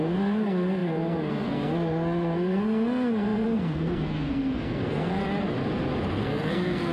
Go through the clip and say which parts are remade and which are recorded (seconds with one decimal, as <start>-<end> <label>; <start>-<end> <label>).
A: 0.0-5.2 remade; 5.2-6.1 recorded; 6.1-6.9 remade